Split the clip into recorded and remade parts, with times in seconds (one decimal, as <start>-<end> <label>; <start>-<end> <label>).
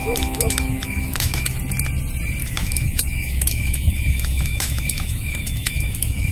0.0-1.6 remade; 1.6-2.4 recorded; 2.4-6.3 remade